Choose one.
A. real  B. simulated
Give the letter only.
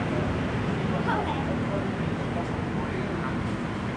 A